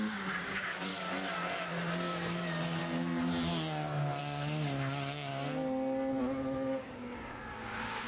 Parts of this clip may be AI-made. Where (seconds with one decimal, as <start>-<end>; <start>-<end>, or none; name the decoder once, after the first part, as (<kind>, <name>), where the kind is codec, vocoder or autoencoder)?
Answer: 0.0-0.9 (codec, DAC); 1.7-2.8; 4.2-5.3; 6.2-8.1